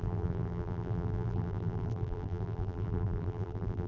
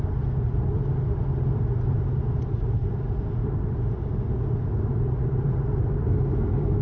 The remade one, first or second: first